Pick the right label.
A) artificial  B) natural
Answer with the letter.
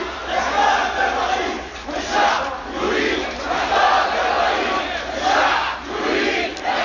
A